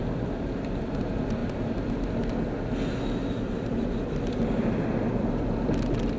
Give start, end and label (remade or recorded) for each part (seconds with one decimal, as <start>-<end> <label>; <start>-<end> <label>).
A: 0.0-6.2 recorded

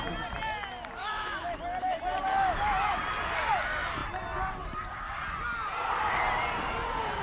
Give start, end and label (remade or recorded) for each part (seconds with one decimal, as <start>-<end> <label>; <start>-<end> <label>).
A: 0.0-1.0 recorded; 1.0-1.6 remade; 1.6-2.3 recorded; 2.3-3.0 remade; 3.0-7.2 recorded

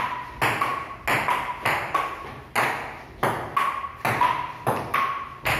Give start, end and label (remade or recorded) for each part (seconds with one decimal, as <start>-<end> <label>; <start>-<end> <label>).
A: 0.0-5.6 recorded

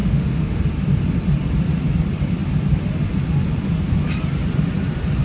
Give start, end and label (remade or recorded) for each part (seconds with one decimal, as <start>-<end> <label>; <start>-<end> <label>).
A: 0.0-0.6 remade; 0.6-5.2 recorded

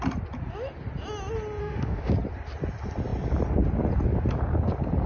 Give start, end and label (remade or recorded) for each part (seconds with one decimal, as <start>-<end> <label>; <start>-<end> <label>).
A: 0.0-1.6 recorded; 1.6-2.1 remade; 2.1-5.1 recorded

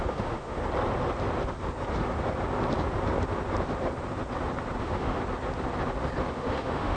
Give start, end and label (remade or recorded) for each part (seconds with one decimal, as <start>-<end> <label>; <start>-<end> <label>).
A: 0.0-0.6 remade; 0.6-4.8 recorded; 4.8-5.2 remade; 5.2-6.3 recorded; 6.3-7.0 remade

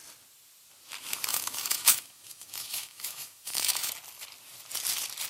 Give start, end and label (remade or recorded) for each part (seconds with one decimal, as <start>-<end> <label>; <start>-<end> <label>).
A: 0.0-1.3 recorded; 1.3-3.9 remade; 3.9-5.3 recorded

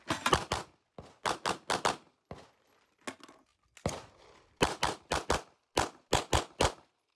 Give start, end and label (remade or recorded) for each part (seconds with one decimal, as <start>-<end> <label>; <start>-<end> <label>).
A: 0.0-7.2 recorded